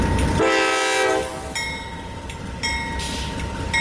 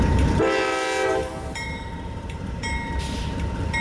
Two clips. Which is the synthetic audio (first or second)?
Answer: second